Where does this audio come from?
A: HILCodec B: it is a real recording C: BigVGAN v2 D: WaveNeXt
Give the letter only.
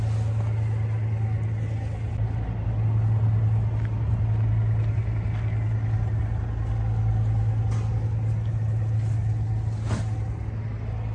B